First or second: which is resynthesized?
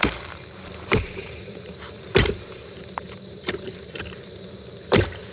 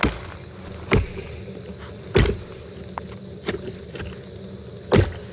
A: first